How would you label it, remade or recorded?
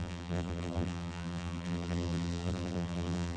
remade